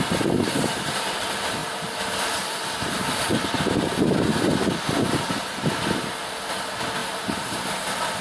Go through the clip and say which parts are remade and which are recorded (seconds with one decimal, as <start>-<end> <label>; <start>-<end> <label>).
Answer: 0.0-7.0 recorded; 7.0-7.6 remade; 7.6-8.2 recorded

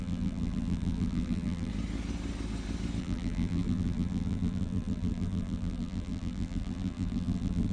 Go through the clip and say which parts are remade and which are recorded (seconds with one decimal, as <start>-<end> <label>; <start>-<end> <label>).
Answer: 0.0-1.7 remade; 1.7-3.0 recorded; 3.0-7.7 remade

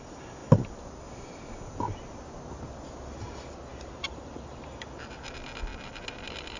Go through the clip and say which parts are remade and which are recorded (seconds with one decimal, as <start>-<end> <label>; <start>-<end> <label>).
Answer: 0.0-3.7 recorded; 3.7-4.6 remade; 4.6-6.6 recorded

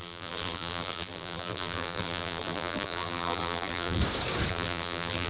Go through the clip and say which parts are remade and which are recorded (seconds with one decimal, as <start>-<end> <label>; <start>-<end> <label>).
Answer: 0.0-4.0 remade; 4.0-4.5 recorded; 4.5-5.3 remade

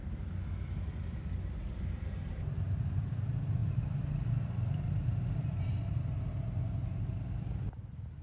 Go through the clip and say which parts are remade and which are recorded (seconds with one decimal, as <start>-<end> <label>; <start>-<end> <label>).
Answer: 0.0-8.2 recorded

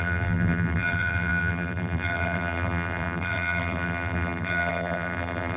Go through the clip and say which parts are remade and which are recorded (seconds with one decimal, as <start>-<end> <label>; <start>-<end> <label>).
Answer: 0.0-5.6 remade